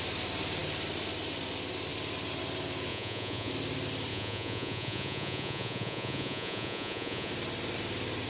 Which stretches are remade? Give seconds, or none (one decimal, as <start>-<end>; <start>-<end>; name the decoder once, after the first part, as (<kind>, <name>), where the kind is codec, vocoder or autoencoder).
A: 2.9-3.5 (vocoder, Vocos); 4.1-7.3